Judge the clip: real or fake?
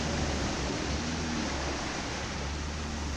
real